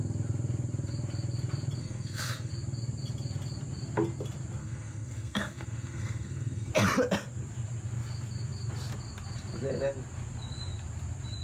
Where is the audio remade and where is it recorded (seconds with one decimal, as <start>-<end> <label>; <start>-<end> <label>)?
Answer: 0.0-1.8 recorded; 1.8-2.5 remade; 2.5-4.6 recorded; 4.6-6.7 remade; 6.7-11.4 recorded